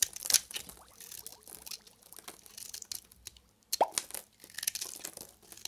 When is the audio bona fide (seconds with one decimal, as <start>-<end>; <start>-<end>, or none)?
0.9-5.7